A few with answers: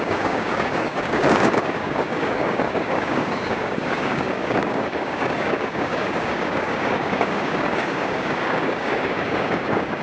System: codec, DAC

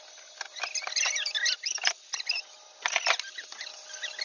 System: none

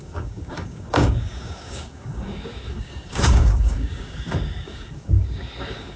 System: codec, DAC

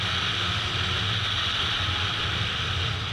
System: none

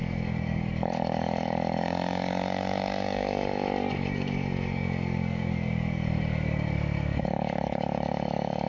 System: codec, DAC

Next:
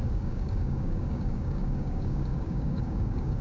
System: codec, DAC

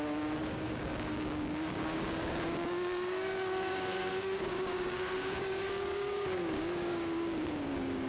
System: codec, DAC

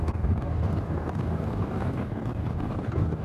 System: codec, DAC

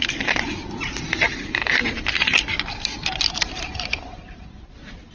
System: none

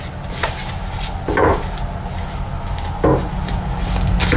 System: none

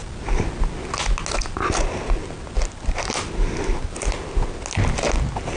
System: none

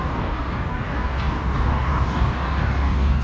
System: codec, DAC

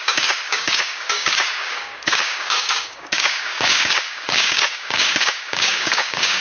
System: codec, DAC